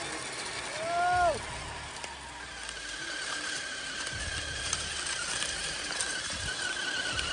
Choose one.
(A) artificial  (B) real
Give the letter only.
B